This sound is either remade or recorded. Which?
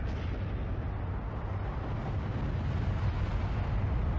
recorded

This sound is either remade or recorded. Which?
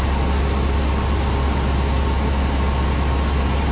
recorded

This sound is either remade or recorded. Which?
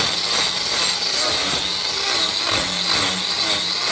recorded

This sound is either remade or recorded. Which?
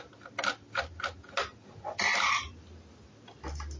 recorded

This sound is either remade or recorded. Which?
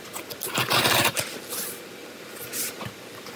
recorded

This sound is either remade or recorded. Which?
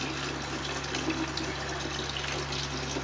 recorded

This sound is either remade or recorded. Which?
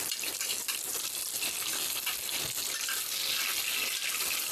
recorded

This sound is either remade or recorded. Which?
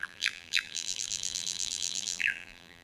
remade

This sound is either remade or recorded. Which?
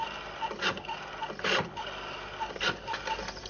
recorded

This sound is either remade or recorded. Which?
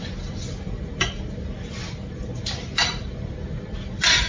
remade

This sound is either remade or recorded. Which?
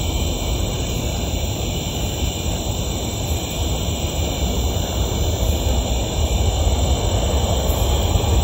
recorded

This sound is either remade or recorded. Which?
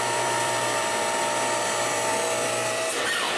remade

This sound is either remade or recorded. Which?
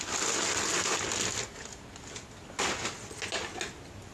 recorded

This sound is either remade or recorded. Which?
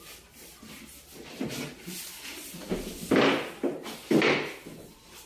recorded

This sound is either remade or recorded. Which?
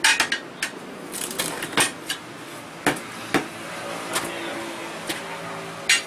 recorded